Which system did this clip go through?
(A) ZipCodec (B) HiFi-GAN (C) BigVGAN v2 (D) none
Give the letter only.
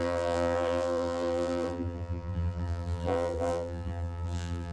C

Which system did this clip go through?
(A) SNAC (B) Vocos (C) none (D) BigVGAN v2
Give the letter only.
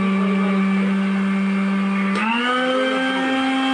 C